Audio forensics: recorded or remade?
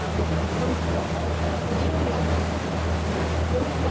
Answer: recorded